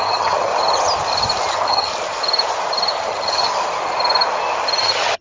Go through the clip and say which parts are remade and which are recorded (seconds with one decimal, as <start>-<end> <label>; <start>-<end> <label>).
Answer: 0.0-0.5 remade; 0.5-1.5 recorded; 1.5-1.9 remade; 1.9-3.0 recorded; 3.0-3.5 remade; 3.5-4.8 recorded; 4.8-5.2 remade